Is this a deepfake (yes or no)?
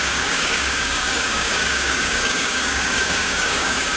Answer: yes